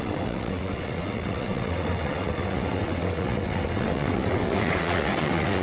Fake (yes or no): yes